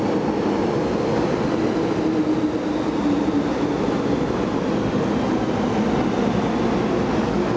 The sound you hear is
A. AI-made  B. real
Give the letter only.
B